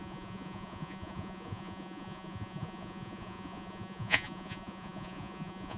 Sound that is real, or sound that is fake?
fake